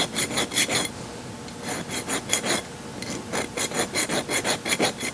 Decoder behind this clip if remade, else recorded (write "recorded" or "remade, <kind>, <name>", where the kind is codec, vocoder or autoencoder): recorded